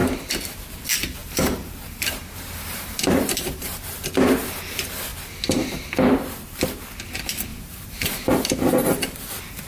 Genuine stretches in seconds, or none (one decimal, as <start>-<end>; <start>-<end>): 0.0-1.2; 4.1-7.5; 8.3-9.7